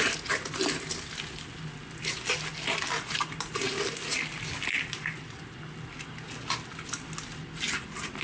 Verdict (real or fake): real